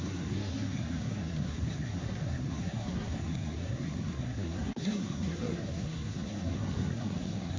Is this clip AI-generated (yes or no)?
yes